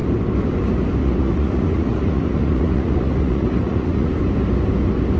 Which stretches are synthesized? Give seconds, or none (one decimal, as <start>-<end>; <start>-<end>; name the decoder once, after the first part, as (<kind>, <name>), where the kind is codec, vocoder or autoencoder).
1.0-4.1 (vocoder, Vocos)

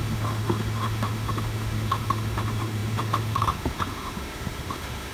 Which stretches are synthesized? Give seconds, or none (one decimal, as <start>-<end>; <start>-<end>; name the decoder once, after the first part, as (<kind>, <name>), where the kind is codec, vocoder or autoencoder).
0.0-5.1 (autoencoder, DAC-VAE)

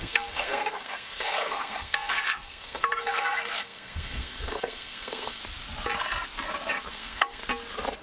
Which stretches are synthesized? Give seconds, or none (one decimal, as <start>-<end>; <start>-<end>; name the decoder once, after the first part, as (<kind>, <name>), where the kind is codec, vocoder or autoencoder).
0.0-5.4 (codec, SNAC); 6.9-7.4

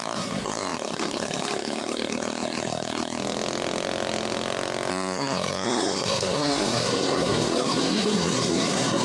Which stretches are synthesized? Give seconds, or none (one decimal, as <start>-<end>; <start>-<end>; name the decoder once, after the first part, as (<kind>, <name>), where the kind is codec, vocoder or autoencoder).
0.0-3.2 (codec, SNAC); 4.9-9.0

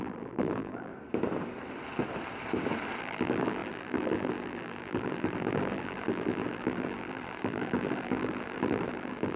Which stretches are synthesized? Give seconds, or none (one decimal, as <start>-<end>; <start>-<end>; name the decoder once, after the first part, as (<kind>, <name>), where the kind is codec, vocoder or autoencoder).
0.0-0.9 (vocoder, BigVGAN v2); 3.0-9.4

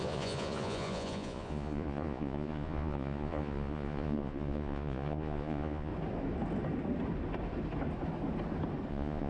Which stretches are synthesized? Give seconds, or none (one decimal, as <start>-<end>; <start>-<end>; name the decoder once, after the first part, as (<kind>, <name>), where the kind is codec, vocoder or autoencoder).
0.0-5.9 (vocoder, Vocos); 8.9-9.3